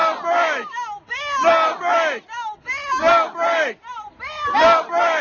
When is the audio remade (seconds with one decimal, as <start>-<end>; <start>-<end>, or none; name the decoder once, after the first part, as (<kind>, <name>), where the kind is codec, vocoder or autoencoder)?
none